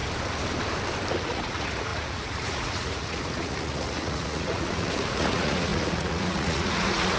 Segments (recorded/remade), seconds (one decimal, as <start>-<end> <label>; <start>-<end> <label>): 0.0-1.1 recorded; 1.1-7.2 remade